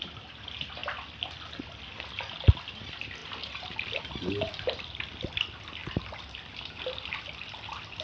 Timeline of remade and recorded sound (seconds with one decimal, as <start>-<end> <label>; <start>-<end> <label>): 0.0-0.8 remade; 0.8-2.7 recorded; 2.7-8.0 remade